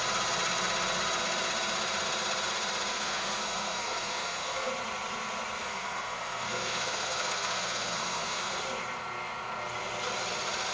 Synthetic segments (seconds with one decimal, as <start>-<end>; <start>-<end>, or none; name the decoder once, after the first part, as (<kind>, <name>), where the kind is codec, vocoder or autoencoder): 2.9-4.7 (codec, SNAC); 5.6-8.6